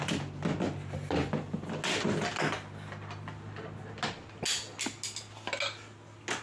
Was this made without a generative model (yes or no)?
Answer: yes